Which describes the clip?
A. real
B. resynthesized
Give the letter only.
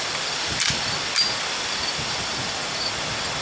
A